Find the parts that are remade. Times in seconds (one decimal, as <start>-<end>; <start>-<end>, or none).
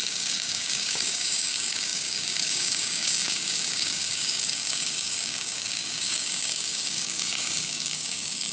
0.0-8.5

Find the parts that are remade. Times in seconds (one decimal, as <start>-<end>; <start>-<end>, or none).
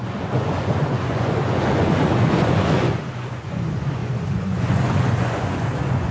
0.0-6.1